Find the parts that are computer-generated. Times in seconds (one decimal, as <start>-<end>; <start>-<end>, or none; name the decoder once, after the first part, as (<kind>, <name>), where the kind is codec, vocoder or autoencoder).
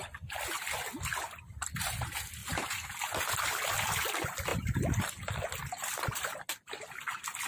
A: none